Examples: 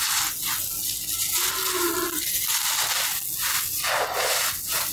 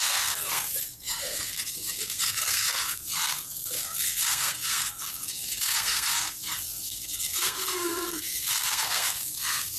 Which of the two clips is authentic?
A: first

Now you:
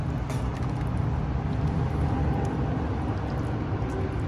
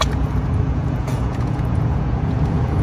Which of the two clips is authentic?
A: first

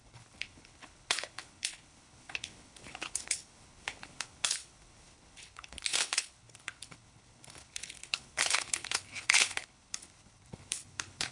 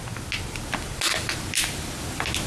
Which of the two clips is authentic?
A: second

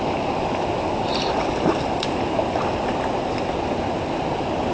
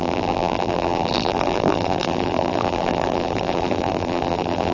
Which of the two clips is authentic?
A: first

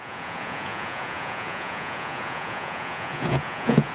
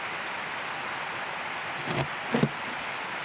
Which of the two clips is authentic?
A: second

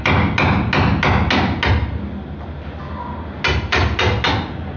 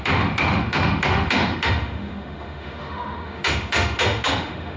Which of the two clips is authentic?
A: first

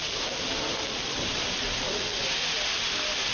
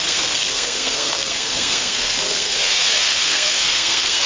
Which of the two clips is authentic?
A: first